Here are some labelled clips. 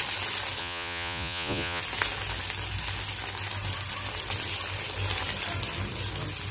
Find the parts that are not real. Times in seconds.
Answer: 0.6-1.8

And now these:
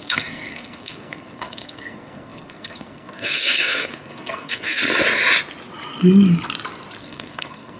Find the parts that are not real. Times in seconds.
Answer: 0.0-4.8; 7.0-7.8

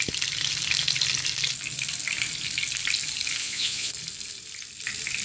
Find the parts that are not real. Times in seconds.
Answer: 3.4-3.9

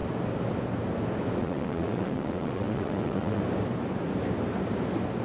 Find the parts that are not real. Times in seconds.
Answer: 1.4-3.4

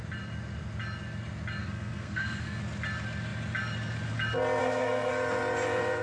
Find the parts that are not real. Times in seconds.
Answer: 1.6-2.6; 4.6-5.1

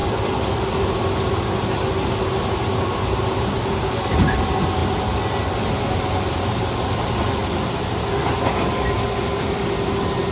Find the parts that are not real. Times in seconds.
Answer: none